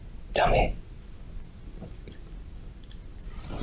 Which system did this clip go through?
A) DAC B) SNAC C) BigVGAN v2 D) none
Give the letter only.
D